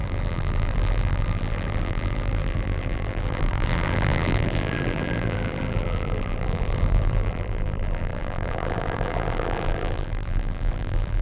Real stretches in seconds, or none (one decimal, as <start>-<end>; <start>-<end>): none